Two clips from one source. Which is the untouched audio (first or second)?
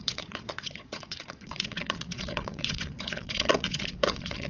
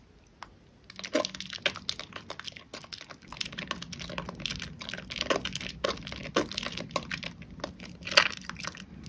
second